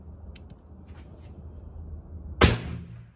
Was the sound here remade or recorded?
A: recorded